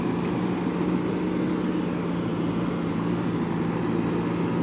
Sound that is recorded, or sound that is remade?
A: recorded